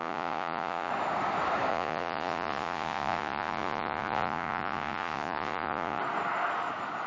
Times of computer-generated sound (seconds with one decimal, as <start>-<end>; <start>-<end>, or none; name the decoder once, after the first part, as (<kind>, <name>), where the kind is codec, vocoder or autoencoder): 0.0-0.9 (vocoder, Vocos); 1.7-6.0